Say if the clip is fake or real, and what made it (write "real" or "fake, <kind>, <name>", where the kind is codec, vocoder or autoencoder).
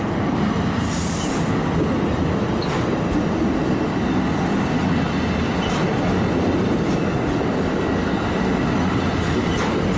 real